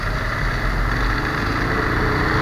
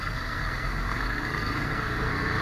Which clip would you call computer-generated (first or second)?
second